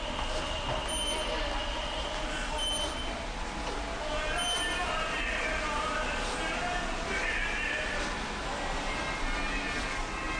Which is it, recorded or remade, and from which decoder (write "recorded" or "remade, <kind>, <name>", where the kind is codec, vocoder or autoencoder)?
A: recorded